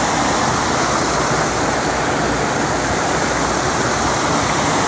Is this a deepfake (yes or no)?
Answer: no